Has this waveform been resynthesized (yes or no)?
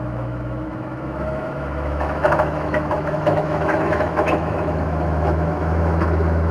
yes